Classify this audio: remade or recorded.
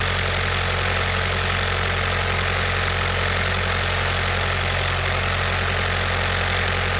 recorded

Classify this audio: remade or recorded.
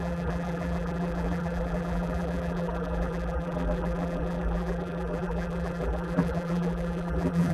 remade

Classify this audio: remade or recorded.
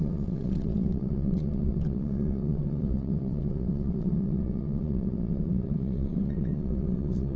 remade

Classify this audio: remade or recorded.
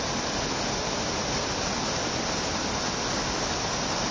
recorded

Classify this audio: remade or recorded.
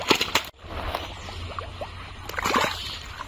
recorded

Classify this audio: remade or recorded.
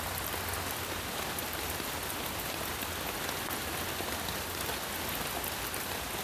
recorded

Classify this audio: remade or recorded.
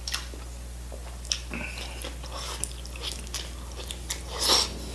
recorded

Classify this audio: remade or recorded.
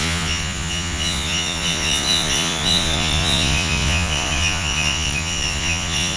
remade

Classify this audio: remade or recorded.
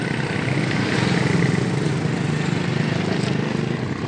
recorded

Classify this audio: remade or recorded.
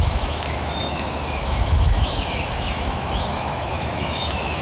remade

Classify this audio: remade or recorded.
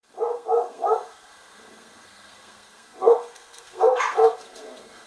remade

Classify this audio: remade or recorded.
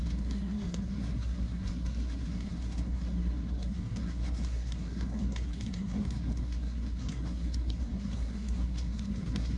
remade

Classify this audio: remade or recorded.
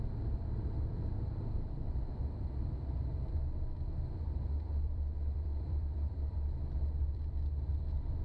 remade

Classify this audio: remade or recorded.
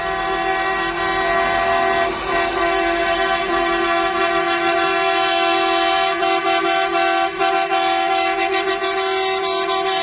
recorded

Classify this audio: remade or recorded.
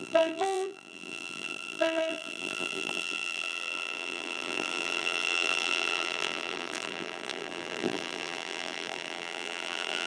remade